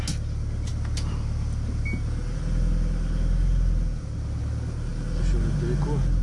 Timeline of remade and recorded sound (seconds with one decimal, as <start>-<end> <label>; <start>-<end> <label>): 0.0-6.2 recorded